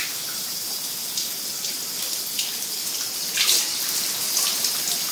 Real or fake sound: real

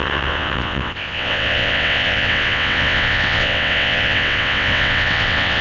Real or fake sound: fake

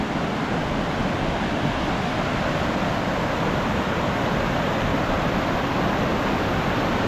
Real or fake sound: real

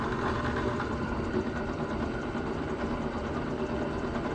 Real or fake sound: fake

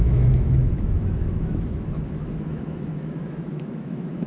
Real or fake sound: fake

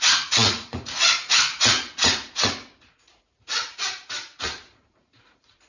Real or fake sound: fake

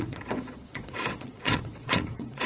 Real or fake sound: fake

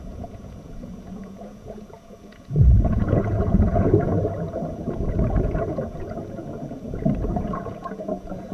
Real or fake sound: fake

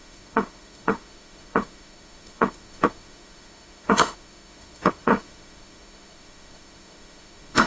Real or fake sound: fake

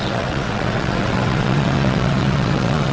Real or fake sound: fake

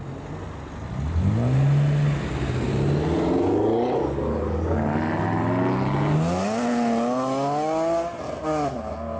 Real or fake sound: real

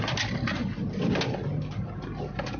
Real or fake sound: real